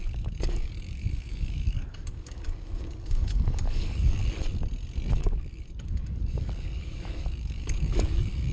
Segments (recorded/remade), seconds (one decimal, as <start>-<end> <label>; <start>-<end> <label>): 0.0-4.2 remade; 4.2-5.1 recorded; 5.1-8.5 remade